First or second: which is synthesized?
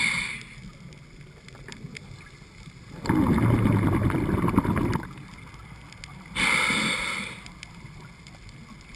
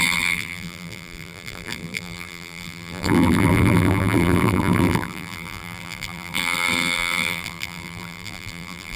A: second